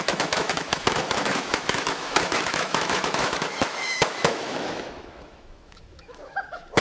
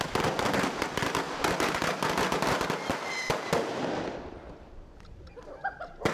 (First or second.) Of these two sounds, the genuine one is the second